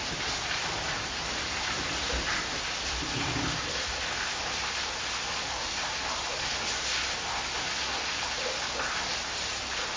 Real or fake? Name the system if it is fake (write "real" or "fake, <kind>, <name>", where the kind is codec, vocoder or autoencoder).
real